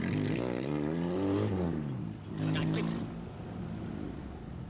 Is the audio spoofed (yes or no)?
no